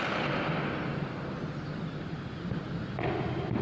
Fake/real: real